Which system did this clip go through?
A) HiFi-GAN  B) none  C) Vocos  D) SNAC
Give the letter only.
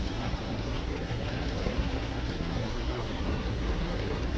D